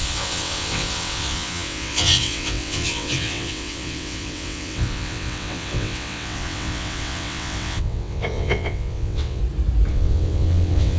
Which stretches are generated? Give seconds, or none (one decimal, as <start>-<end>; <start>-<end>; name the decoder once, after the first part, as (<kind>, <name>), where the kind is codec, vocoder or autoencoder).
0.0-9.4 (vocoder, WaveNeXt); 9.9-11.0